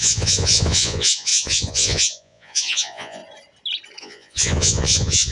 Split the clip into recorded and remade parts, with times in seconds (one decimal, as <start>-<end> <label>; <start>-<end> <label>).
0.0-3.2 remade; 3.2-4.0 recorded; 4.0-5.3 remade

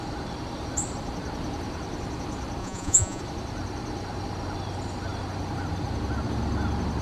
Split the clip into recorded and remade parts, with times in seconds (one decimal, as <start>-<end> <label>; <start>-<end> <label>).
0.0-2.6 recorded; 2.6-3.2 remade; 3.2-7.0 recorded

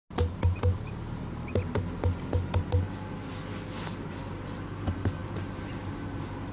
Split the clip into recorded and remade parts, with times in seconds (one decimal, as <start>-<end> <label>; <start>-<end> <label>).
0.0-6.5 recorded

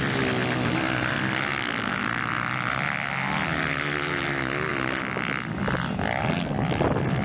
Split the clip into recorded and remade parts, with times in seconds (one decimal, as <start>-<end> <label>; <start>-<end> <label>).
0.0-7.2 recorded

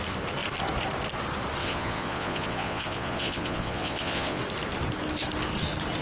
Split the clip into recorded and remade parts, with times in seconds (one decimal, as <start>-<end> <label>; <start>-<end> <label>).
0.0-1.6 recorded; 1.6-4.4 remade; 4.4-6.0 recorded

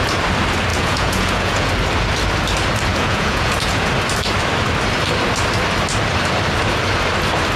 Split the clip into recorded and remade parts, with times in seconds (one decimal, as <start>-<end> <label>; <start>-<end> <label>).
0.0-0.7 recorded; 0.7-1.7 remade; 1.7-2.9 recorded; 2.9-3.9 remade; 3.9-7.6 recorded

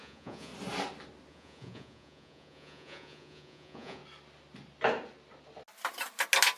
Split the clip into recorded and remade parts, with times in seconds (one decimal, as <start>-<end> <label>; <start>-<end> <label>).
0.0-0.5 remade; 0.5-1.3 recorded; 1.3-4.0 remade; 4.0-6.6 recorded